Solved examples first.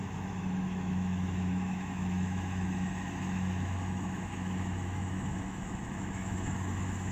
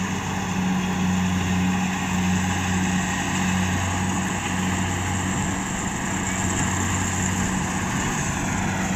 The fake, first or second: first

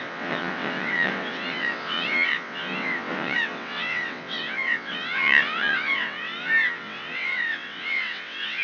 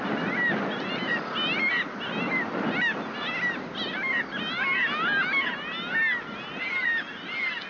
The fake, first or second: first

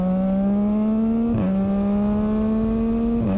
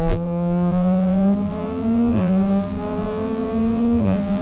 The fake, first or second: second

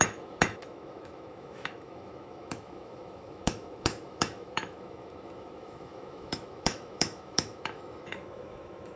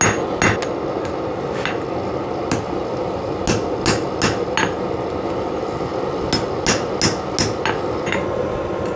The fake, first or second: first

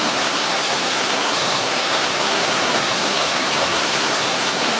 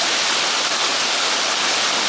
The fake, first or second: first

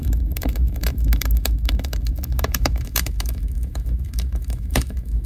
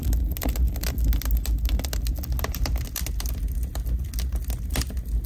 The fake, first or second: first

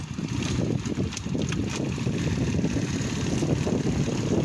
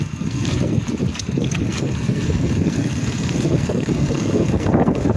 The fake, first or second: second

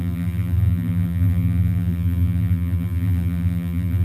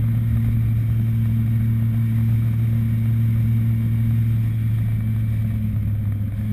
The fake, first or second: first